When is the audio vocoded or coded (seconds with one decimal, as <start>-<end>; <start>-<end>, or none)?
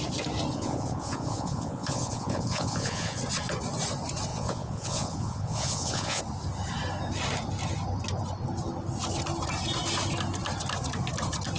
0.5-3.2; 4.3-6.2